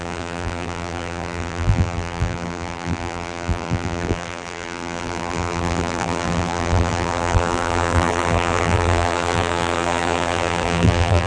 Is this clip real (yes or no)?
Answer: no